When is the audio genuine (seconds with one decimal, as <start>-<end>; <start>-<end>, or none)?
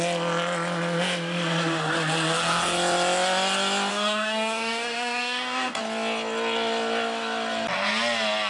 0.0-3.9; 5.8-8.5